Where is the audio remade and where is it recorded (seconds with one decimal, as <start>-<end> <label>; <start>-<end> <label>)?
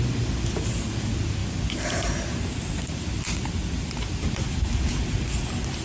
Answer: 0.0-5.8 recorded